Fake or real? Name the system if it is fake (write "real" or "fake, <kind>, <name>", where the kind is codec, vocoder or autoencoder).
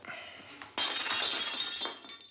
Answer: real